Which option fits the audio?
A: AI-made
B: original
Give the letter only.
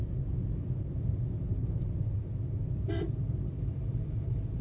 A